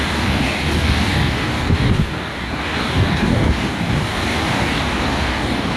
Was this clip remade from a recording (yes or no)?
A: yes